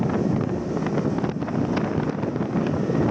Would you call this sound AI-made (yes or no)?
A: no